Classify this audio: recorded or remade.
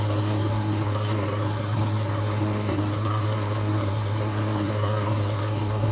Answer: remade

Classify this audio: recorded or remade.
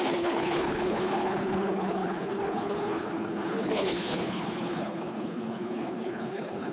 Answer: remade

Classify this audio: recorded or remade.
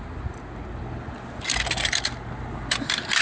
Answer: recorded